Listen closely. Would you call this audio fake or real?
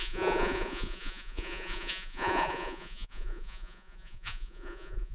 fake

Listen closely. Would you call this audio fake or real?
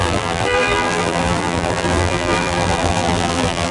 fake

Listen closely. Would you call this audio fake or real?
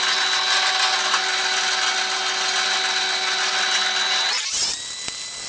real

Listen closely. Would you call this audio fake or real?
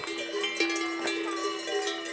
real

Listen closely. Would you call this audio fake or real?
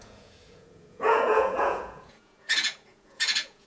fake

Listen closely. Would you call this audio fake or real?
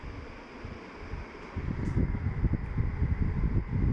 real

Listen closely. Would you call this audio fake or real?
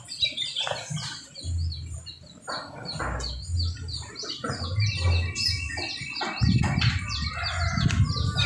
real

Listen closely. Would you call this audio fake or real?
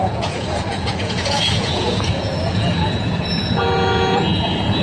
fake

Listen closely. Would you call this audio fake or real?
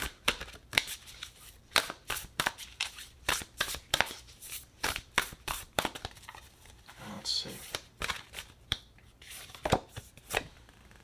fake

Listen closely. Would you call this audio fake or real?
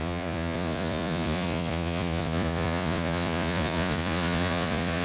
fake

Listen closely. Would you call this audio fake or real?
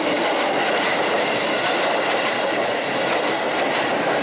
real